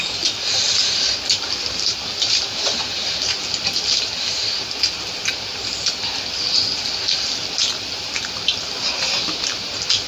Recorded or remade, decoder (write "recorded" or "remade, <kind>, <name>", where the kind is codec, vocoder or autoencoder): recorded